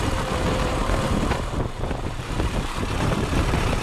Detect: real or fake fake